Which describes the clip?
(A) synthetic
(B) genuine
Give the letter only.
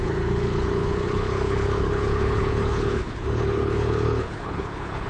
A